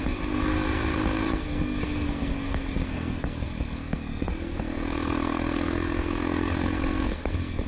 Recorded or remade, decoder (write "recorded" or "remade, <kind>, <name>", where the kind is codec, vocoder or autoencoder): remade, codec, SNAC